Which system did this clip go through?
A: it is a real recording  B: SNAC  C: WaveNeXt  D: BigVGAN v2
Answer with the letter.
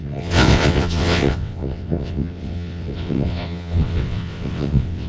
C